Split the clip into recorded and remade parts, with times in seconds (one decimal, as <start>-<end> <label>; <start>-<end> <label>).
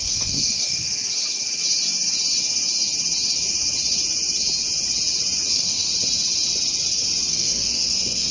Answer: 0.0-0.9 remade; 0.9-5.5 recorded; 5.5-5.9 remade; 5.9-7.3 recorded; 7.3-8.3 remade